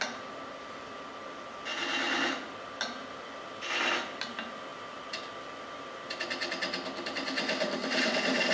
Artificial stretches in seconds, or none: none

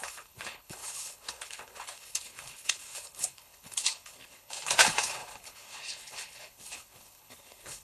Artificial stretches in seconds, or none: 0.0-7.8

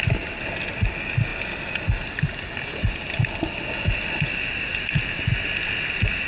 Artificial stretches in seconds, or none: none

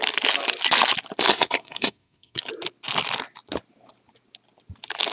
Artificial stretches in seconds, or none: 1.3-2.5

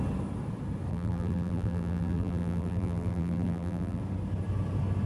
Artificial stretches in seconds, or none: 0.9-4.0

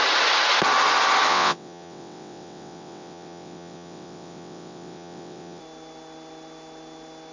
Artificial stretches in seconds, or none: 1.3-5.6

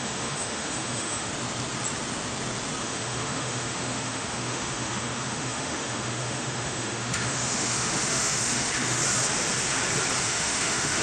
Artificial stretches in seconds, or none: 0.0-1.3; 2.8-9.0; 10.2-11.0

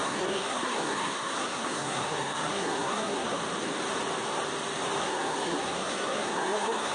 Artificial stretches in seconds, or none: 0.0-3.4; 5.0-6.9